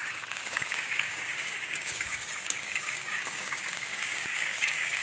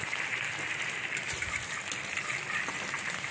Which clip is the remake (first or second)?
first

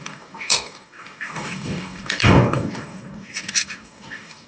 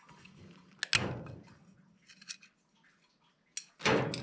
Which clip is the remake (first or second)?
first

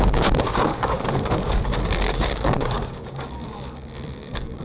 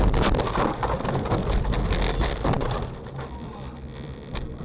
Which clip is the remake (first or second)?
first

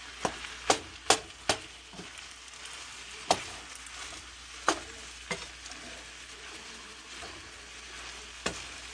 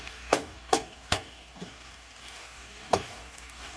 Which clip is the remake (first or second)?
second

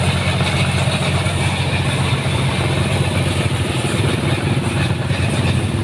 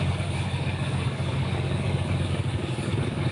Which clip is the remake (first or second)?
second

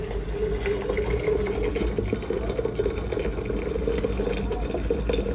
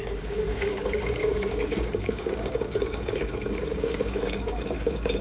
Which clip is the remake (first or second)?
second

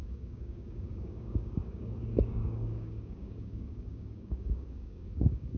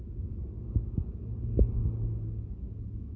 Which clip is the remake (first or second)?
first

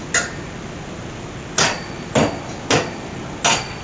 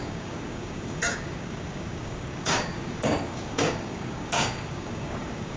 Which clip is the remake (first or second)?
second